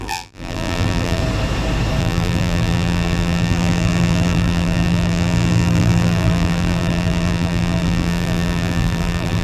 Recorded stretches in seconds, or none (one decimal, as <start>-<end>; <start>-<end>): 1.2-2.0